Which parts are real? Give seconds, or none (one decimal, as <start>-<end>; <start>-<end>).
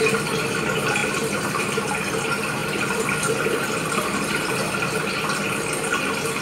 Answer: 0.0-1.0; 1.9-6.4